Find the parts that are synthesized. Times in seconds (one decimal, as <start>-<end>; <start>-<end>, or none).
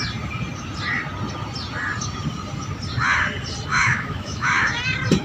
3.7-4.7